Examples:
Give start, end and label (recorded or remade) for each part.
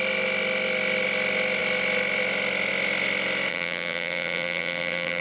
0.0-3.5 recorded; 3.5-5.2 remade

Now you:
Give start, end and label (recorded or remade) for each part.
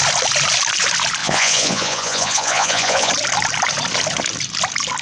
0.0-1.2 recorded; 1.2-3.1 remade; 3.1-5.0 recorded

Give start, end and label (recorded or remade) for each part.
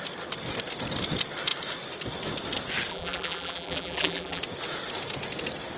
0.0-2.9 recorded; 2.9-4.4 remade; 4.4-5.8 recorded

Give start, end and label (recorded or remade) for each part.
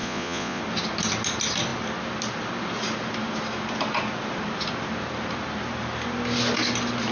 0.0-0.6 remade; 0.6-7.1 recorded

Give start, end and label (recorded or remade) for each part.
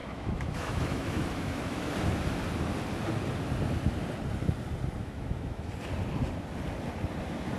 0.0-1.9 remade; 1.9-5.0 recorded; 5.0-5.6 remade; 5.6-7.6 recorded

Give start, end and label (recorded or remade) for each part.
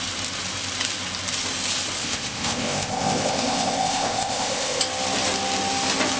0.0-2.0 recorded; 2.0-4.8 remade; 4.8-6.2 recorded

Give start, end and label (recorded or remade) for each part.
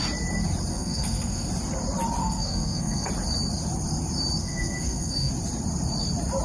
0.0-0.7 recorded; 0.7-1.5 remade; 1.5-2.2 recorded; 2.2-3.1 remade; 3.1-4.4 recorded; 4.4-5.3 remade; 5.3-6.4 recorded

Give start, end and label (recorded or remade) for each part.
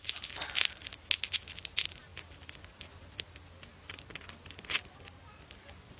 0.0-6.0 recorded